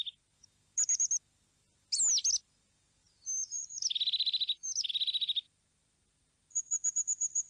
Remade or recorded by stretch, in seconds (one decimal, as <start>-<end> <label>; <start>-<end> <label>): 0.0-7.5 recorded